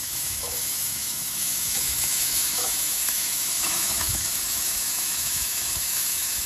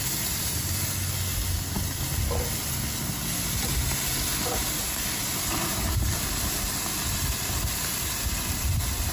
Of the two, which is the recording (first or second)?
second